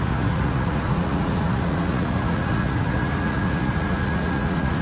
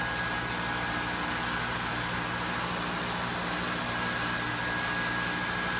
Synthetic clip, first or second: first